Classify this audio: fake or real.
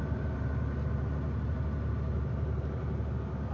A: real